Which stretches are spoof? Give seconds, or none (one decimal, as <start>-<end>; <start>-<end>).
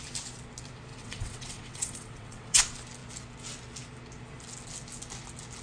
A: 0.9-2.6